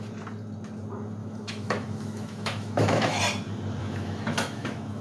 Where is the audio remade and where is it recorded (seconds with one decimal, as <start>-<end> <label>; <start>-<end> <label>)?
0.0-1.2 recorded; 1.2-3.2 remade; 3.2-3.8 recorded; 3.8-5.0 remade